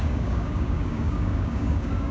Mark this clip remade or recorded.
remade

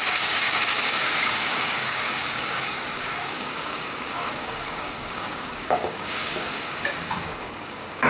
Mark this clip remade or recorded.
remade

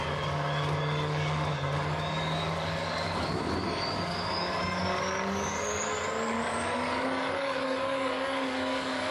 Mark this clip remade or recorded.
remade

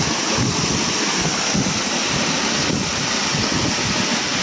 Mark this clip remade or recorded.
recorded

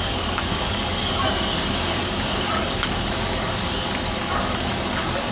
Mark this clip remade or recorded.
remade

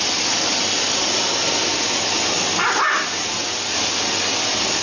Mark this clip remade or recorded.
recorded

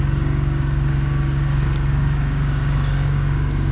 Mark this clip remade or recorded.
remade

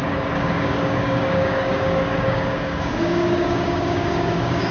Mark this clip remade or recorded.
remade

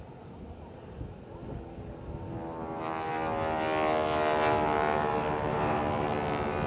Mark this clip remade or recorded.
recorded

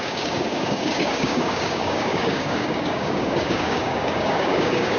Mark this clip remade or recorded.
remade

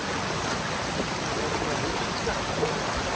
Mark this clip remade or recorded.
recorded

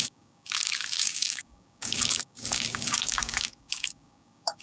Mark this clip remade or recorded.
remade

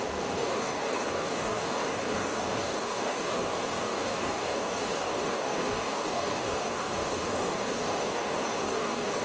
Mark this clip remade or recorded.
remade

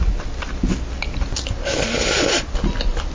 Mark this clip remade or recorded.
recorded